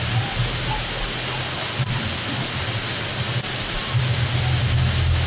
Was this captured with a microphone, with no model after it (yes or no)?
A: yes